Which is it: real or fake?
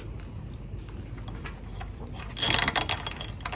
real